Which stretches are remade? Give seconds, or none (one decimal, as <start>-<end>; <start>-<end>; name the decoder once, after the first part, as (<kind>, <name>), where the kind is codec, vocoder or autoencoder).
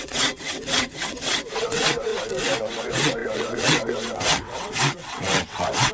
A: 0.0-2.1 (vocoder, WaveNeXt); 2.6-5.9